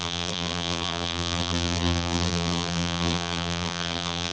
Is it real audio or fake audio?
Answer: fake